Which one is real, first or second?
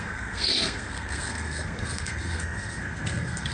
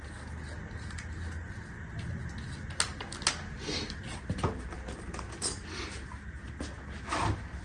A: second